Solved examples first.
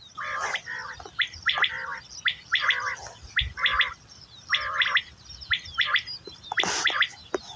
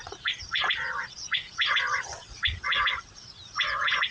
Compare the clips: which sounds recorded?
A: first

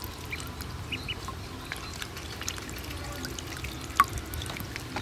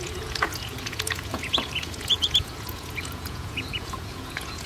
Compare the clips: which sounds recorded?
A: first